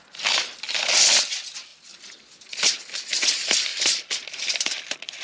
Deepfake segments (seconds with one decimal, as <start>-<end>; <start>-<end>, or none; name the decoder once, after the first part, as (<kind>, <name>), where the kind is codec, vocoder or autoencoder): none